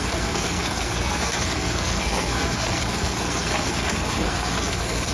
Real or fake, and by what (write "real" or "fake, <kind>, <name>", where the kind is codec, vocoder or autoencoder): fake, codec, SNAC